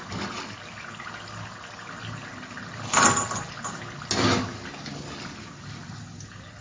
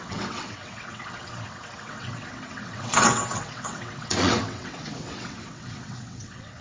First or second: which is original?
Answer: first